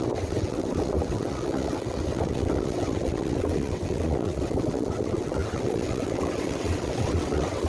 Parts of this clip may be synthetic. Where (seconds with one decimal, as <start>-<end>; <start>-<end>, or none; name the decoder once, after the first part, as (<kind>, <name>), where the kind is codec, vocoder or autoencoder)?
0.0-7.7 (vocoder, WaveNeXt)